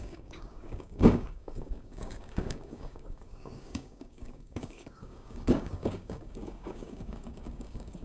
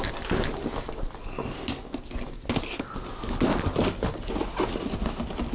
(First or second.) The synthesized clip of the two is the first